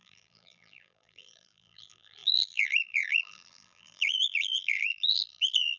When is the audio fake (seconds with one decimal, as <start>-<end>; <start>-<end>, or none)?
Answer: 0.0-5.8